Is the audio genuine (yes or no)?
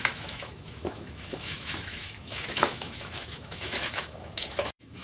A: no